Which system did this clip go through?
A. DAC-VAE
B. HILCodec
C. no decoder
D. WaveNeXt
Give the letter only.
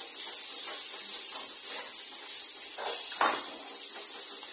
C